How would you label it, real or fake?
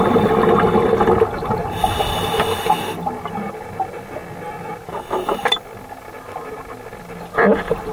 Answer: real